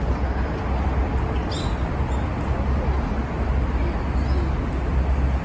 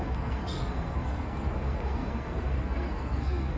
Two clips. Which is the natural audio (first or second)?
first